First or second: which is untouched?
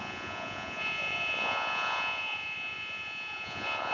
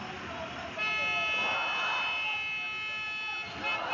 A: second